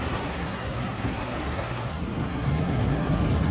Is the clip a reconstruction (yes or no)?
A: yes